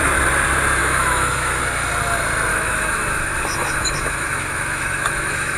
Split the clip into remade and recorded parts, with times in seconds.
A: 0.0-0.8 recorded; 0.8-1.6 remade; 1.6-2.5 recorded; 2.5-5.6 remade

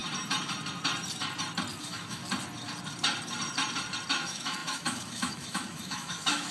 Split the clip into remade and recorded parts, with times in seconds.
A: 0.0-1.8 recorded; 1.8-2.2 remade; 2.2-4.1 recorded; 4.1-6.5 remade

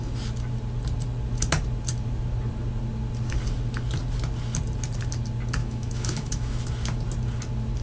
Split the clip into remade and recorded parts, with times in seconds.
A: 0.0-5.6 recorded; 5.6-6.6 remade; 6.6-7.8 recorded